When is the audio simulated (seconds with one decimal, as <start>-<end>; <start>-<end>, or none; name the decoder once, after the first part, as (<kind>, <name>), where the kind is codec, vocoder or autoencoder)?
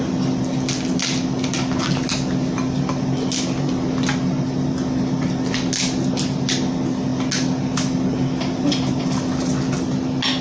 none